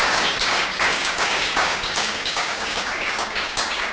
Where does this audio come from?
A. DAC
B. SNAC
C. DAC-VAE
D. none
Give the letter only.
A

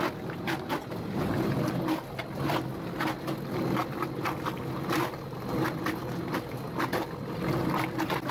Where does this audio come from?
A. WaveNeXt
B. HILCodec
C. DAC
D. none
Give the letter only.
D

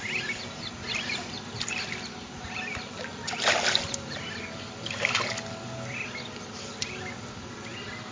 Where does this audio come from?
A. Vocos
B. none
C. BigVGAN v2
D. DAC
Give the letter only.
B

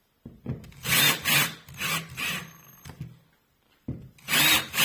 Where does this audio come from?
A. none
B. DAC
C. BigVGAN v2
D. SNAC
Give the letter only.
A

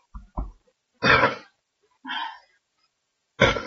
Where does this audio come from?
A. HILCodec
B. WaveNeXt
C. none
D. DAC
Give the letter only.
C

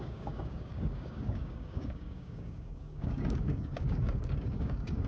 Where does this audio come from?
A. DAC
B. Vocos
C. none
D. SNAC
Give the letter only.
A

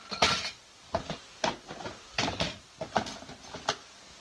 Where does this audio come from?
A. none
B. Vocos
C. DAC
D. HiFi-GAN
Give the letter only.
A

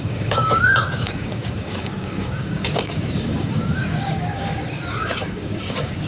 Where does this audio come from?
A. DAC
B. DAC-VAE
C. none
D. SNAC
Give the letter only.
A